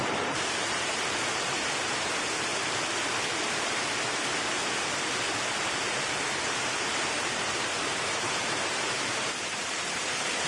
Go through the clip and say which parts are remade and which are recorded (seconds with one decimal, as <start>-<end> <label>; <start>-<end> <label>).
0.0-2.5 remade; 2.5-6.2 recorded; 6.2-10.5 remade